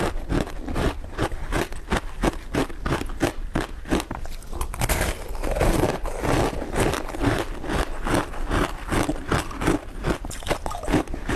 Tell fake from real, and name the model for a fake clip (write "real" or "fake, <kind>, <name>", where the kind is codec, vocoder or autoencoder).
real